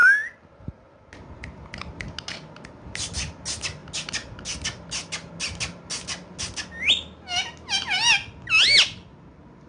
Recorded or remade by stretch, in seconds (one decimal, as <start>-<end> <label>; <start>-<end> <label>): 0.0-9.7 recorded